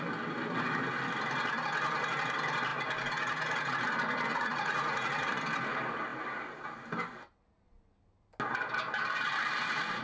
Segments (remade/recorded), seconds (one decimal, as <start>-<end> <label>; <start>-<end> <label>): 0.0-4.3 recorded; 4.3-5.4 remade; 5.4-10.0 recorded